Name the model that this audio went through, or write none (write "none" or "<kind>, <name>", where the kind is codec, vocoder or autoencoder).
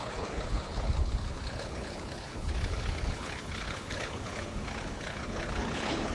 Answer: codec, HILCodec